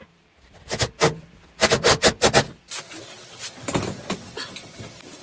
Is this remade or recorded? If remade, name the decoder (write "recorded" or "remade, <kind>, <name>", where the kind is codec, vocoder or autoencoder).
recorded